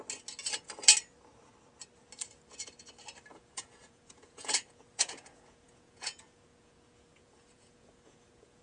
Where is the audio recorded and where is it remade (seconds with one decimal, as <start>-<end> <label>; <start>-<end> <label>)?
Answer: 0.0-3.3 recorded; 3.3-8.6 remade